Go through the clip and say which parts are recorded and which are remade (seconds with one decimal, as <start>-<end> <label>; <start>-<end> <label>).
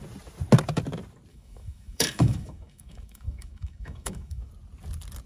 0.0-1.3 recorded; 1.3-4.5 remade; 4.5-5.3 recorded